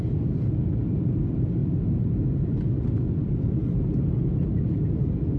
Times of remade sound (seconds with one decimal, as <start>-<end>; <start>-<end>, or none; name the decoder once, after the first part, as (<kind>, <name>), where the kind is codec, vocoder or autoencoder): none